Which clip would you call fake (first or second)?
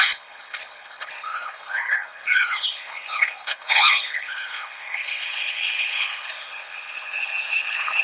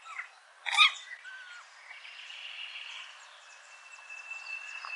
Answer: first